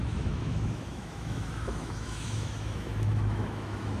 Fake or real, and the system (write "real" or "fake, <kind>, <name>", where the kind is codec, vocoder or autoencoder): fake, autoencoder, DAC-VAE